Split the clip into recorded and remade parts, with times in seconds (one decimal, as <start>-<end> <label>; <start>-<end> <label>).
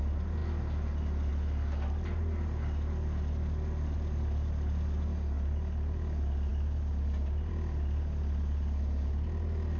0.0-9.8 recorded